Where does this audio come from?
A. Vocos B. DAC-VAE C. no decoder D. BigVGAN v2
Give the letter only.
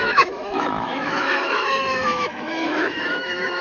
B